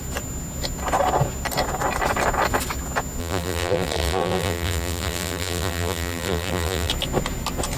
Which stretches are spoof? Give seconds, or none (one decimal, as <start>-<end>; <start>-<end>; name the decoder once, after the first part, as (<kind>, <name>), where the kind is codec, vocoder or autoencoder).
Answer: 3.2-6.9 (vocoder, BigVGAN v2)